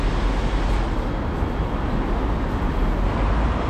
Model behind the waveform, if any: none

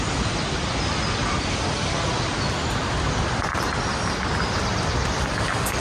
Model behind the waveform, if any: vocoder, BigVGAN v2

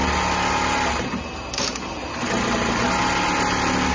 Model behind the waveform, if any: none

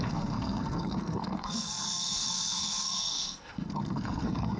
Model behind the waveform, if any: codec, SNAC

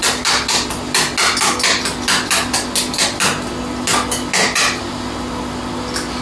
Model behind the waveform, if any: none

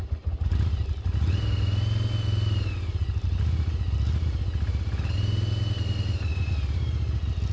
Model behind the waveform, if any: none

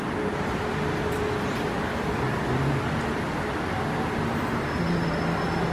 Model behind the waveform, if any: none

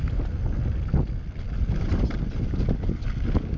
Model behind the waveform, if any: none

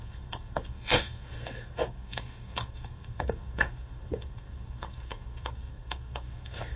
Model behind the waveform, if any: codec, SNAC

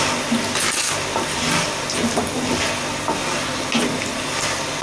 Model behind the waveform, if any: none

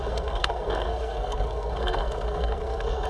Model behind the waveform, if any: codec, SNAC